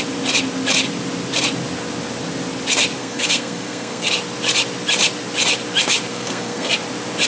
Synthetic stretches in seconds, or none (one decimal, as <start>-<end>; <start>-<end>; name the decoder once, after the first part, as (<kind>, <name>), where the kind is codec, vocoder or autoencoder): 3.0-4.1 (codec, SNAC); 6.1-6.7